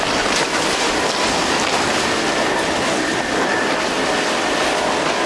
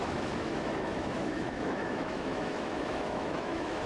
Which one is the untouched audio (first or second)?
first